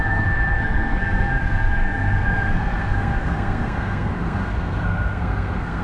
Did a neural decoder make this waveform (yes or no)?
yes